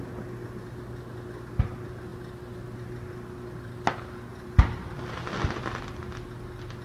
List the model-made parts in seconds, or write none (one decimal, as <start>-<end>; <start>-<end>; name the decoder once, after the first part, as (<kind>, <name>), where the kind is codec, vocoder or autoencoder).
none